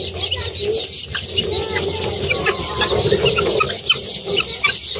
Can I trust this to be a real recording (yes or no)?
yes